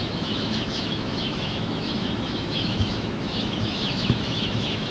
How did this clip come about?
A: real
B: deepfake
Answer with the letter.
B